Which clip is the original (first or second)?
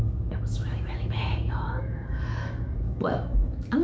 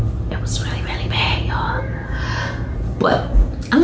second